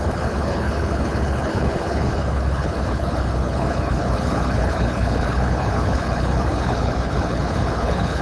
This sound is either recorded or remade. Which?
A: remade